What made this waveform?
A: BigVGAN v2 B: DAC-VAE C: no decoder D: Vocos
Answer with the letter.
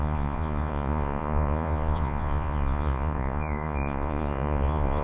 D